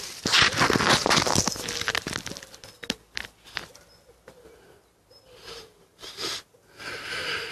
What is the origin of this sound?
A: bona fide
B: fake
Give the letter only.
A